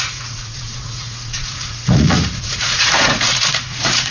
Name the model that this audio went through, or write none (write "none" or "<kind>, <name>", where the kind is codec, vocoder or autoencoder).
vocoder, Vocos